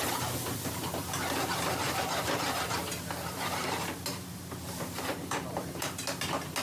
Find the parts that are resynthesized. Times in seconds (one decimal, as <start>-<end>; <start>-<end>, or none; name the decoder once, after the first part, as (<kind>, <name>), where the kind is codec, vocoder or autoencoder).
1.8-5.8 (vocoder, BigVGAN v2)